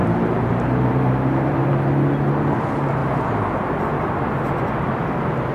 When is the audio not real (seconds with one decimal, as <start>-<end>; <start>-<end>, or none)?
0.0-1.7